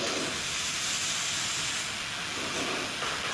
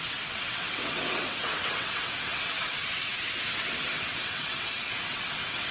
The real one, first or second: first